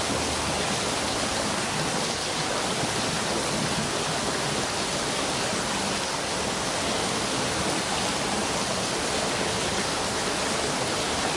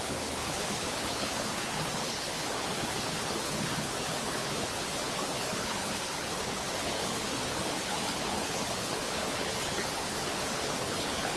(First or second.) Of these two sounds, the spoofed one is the second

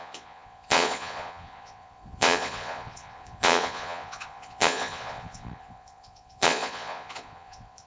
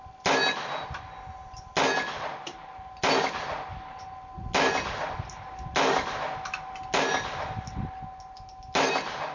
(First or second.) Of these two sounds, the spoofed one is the first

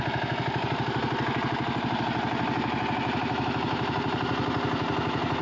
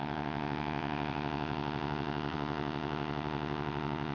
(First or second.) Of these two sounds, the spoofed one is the second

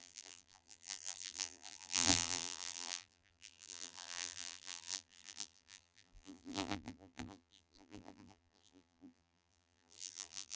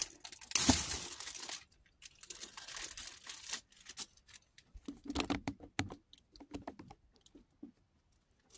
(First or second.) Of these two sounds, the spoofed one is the first